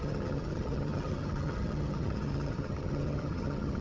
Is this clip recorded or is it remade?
remade